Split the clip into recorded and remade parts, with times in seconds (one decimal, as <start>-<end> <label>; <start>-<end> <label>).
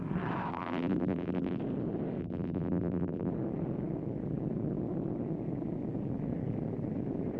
0.0-0.5 recorded; 0.5-1.6 remade; 1.6-2.2 recorded; 2.2-3.3 remade; 3.3-7.4 recorded